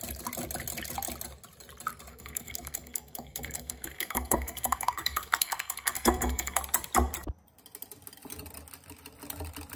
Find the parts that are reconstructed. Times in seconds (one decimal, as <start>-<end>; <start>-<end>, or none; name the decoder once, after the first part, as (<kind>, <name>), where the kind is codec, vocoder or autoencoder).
2.1-6.6 (codec, SNAC)